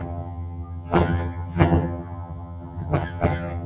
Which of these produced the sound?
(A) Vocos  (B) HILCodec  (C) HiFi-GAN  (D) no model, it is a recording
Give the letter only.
C